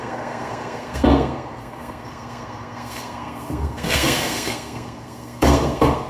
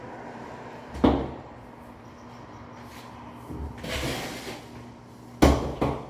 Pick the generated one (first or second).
first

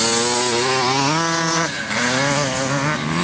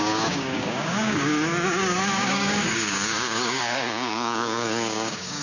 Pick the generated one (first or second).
second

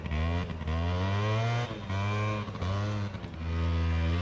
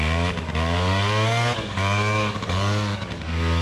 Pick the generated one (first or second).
second